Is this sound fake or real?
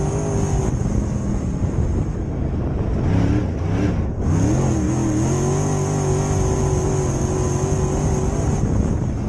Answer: real